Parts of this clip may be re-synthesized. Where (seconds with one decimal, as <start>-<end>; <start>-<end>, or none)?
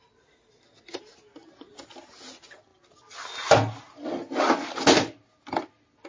none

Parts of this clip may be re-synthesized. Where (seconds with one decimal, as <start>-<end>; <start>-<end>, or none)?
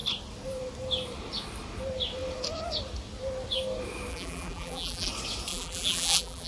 4.1-5.1; 5.5-6.5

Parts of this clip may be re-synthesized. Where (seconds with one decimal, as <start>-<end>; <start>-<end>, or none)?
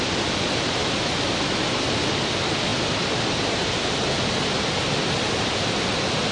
none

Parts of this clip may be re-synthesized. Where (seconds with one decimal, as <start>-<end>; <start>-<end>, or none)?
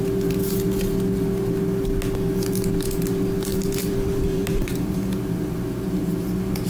3.5-5.0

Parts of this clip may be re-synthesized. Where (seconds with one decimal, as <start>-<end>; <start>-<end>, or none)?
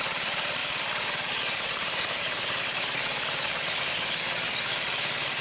0.6-3.8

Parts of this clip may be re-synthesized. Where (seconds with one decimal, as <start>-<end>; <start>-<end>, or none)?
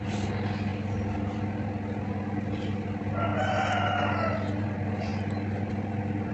0.0-0.7; 2.1-3.3; 4.6-6.3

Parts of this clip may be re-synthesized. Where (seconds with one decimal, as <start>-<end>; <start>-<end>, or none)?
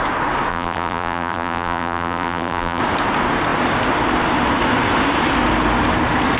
0.5-2.8